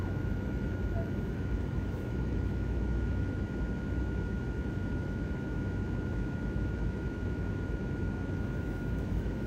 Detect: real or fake fake